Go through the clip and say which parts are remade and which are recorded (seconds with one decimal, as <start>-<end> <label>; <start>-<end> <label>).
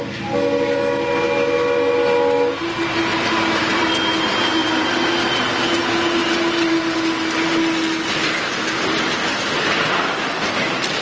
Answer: 0.0-11.0 recorded